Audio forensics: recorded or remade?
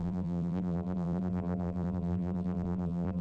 remade